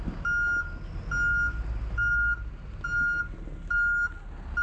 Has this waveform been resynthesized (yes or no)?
no